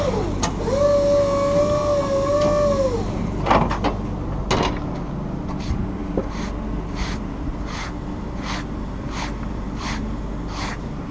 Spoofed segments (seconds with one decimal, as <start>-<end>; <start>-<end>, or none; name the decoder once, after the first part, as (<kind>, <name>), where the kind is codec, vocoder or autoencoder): 6.0-10.2 (vocoder, BigVGAN v2)